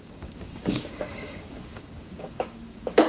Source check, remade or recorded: remade